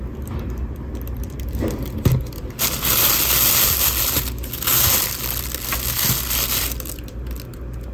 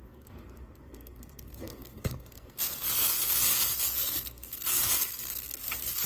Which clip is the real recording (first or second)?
first